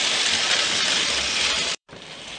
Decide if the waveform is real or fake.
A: fake